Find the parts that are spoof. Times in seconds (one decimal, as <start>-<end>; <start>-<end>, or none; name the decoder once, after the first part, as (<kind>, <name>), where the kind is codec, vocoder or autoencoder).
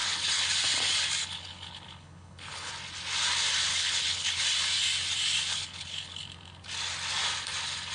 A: 0.0-0.5 (codec, HILCodec); 1.2-2.7; 3.7-4.4; 5.5-6.3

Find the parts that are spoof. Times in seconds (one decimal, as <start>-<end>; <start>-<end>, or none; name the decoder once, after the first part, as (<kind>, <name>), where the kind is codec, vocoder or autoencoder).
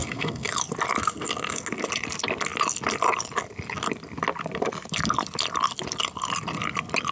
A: 0.0-0.5 (codec, SNAC)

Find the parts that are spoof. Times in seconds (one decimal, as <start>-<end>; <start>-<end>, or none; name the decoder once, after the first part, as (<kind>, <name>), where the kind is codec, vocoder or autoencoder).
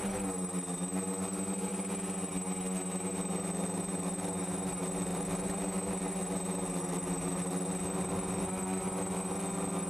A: none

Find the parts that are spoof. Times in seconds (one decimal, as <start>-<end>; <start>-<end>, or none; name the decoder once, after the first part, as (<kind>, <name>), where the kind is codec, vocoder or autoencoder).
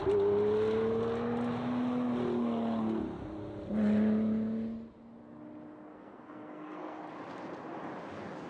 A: 5.9-7.0 (codec, SNAC)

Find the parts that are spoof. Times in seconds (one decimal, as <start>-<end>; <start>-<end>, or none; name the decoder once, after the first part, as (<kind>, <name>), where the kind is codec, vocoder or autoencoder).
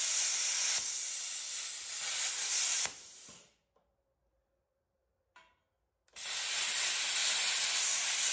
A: none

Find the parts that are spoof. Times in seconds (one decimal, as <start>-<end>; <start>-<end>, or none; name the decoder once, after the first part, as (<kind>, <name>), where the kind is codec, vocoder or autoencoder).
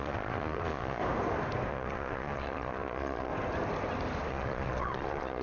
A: 0.0-1.0 (vocoder, Vocos); 1.7-3.3; 4.3-5.4